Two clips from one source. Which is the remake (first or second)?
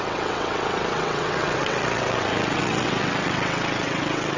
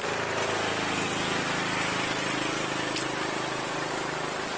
first